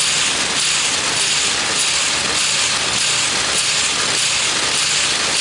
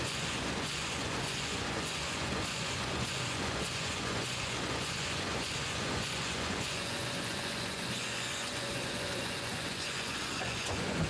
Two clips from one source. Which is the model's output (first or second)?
second